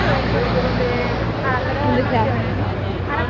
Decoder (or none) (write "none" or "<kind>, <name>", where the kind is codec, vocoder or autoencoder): none